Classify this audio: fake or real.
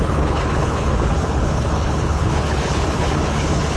fake